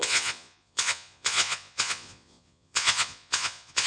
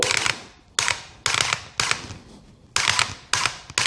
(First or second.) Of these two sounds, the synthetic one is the first